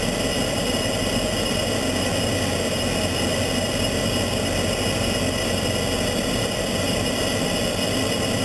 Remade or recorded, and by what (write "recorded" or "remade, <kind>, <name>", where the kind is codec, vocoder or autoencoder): recorded